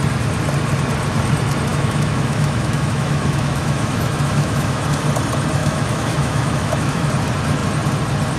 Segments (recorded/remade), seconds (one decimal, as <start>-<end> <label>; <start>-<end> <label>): 0.0-1.7 recorded; 1.7-4.8 remade; 4.8-5.6 recorded; 5.6-7.1 remade; 7.1-8.4 recorded